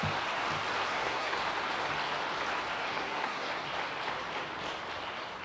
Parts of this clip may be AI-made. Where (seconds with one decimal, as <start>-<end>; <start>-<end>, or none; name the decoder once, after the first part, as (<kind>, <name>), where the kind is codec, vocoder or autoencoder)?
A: 0.9-1.4 (codec, SNAC); 2.8-3.5